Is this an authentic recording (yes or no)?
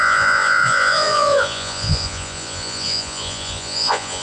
no